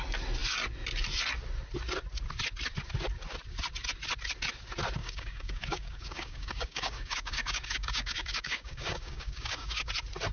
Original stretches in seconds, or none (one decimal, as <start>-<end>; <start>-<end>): 0.0-5.0; 9.9-10.3